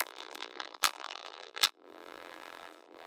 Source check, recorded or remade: remade